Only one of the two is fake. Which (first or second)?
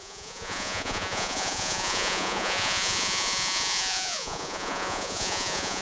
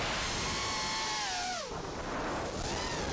first